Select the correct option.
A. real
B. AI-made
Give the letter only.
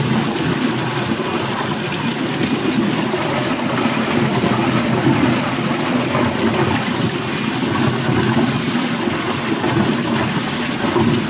A